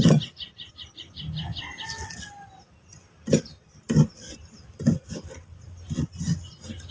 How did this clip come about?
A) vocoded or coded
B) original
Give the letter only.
B